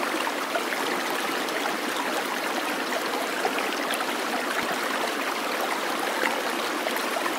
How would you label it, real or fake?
real